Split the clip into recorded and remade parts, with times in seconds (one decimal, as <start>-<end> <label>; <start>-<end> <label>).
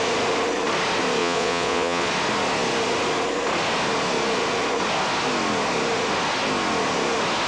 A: 0.0-1.2 recorded; 1.2-2.1 remade; 2.1-7.5 recorded